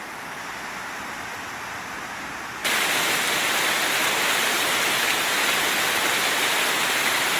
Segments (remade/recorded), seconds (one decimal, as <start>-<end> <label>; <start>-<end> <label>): 0.0-2.6 recorded; 2.6-6.6 remade; 6.6-7.4 recorded